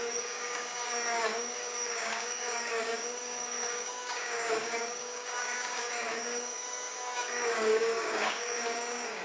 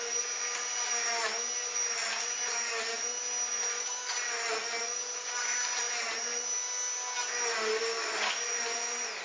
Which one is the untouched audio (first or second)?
second